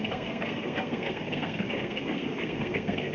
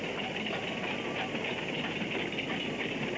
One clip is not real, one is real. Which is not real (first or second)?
first